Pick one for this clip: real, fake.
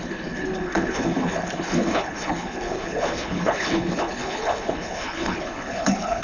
fake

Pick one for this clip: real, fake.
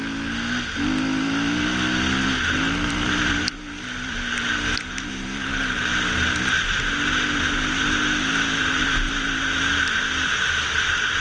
real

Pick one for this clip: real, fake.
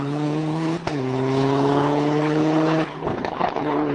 fake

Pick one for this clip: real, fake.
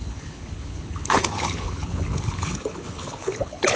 fake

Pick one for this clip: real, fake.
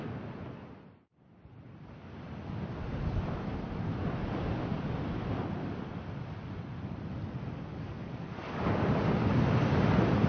real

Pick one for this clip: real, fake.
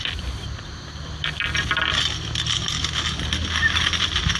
real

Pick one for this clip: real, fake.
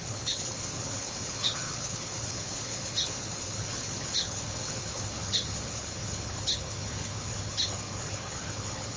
fake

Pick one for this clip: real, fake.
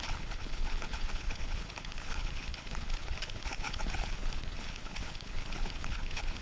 fake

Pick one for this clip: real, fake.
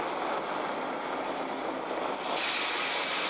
real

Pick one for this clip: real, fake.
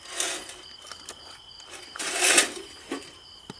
real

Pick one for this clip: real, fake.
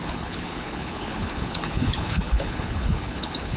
fake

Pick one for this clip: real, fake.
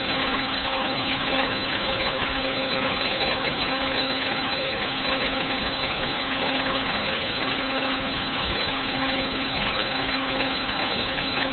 fake